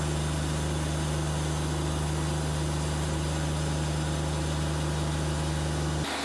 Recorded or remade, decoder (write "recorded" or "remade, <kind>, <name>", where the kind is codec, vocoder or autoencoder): recorded